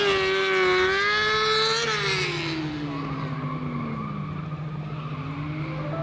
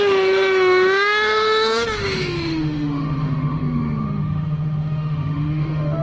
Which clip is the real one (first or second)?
first